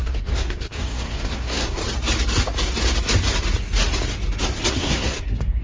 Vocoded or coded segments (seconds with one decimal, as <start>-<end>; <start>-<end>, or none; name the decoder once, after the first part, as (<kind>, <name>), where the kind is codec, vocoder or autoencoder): 0.0-1.8 (codec, SNAC); 4.7-5.6